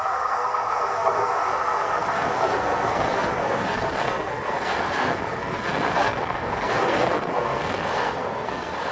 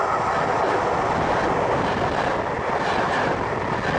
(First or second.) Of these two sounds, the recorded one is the second